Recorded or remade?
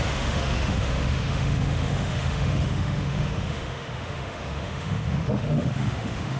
remade